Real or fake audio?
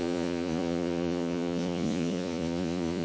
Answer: fake